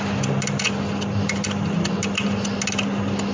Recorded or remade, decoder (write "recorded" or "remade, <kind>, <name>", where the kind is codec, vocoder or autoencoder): recorded